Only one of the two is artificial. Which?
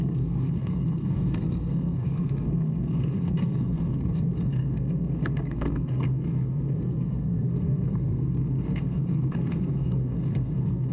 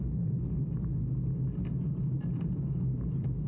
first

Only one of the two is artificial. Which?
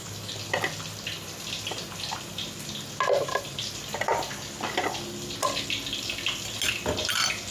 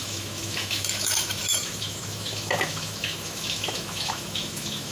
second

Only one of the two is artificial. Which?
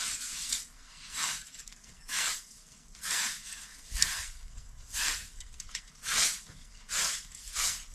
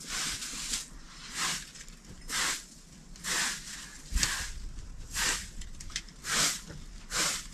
first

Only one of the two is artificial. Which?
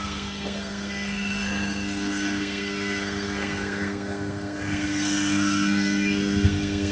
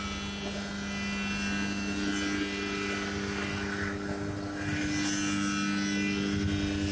first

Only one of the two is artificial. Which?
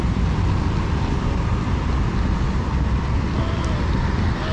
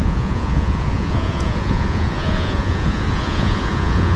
second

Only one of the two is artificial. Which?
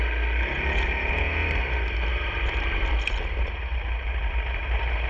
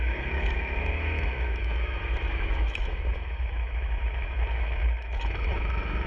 second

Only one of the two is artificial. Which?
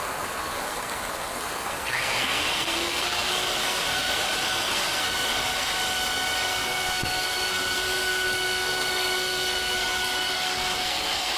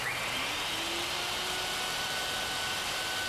first